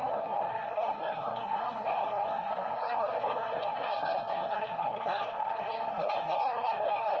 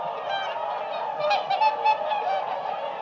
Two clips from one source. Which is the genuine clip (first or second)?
second